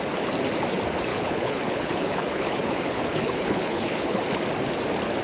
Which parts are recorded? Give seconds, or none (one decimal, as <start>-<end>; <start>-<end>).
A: 0.0-1.1; 4.2-5.2